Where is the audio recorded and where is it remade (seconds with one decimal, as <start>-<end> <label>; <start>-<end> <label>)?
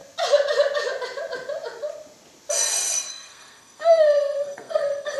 0.0-3.1 recorded; 3.1-5.2 remade